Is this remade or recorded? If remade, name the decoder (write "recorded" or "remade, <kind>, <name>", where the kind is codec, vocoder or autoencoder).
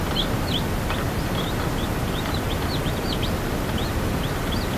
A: recorded